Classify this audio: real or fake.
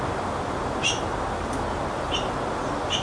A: real